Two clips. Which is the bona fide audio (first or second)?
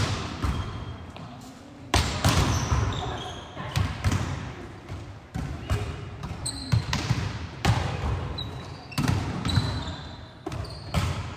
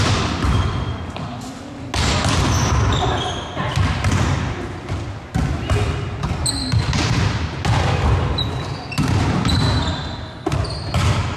second